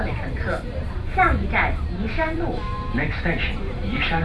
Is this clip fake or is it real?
fake